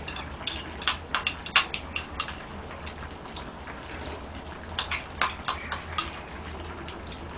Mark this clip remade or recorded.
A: recorded